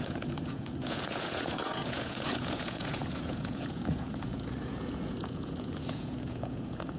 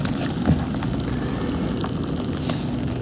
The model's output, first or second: first